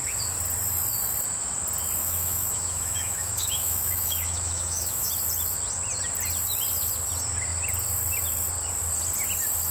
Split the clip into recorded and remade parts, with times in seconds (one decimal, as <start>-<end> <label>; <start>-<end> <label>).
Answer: 0.0-2.0 recorded; 2.0-5.1 remade; 5.1-9.7 recorded